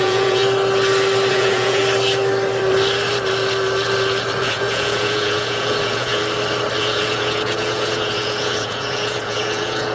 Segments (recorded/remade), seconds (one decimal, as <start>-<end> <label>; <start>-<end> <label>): 0.0-0.4 remade; 0.4-1.3 recorded; 1.3-1.8 remade; 1.8-4.4 recorded; 4.4-6.2 remade; 6.2-6.8 recorded; 6.8-9.9 remade